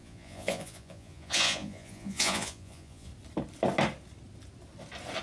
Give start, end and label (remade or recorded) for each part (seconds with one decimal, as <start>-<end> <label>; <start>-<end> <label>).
0.0-3.1 remade; 3.1-5.2 recorded